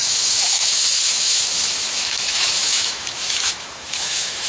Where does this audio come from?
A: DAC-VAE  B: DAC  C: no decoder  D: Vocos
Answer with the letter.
A